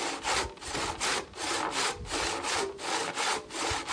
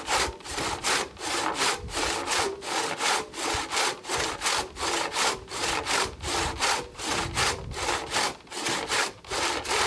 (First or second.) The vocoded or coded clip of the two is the second